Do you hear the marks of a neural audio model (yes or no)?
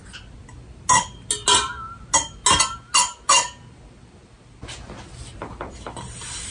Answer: no